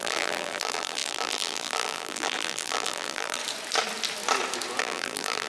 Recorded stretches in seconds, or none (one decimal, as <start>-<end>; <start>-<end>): 3.4-4.8